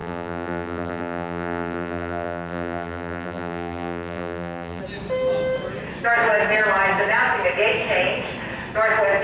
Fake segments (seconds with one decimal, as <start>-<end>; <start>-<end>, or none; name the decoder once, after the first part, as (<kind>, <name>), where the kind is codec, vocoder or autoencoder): 0.0-4.8 (vocoder, BigVGAN v2)